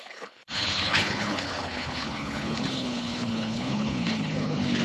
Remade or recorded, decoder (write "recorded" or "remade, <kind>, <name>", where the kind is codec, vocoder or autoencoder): remade, codec, HILCodec